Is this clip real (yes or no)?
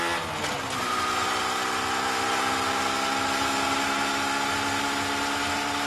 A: yes